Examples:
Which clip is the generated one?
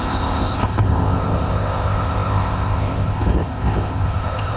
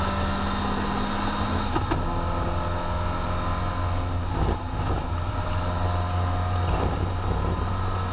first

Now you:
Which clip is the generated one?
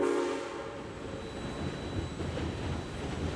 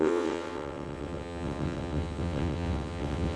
second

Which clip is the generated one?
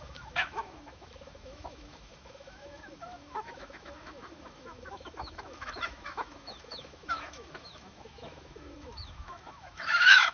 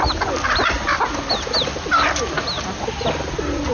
first